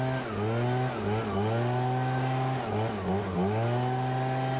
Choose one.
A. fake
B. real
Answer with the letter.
B